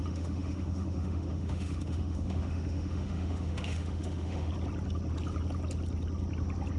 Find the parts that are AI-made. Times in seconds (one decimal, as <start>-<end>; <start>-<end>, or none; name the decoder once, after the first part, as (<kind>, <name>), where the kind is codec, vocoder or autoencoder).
0.0-4.5 (autoencoder, DAC-VAE)